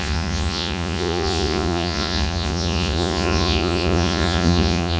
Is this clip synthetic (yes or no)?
yes